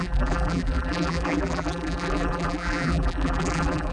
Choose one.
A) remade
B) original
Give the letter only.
A